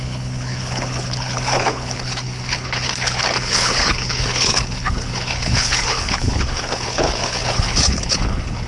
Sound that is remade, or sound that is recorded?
remade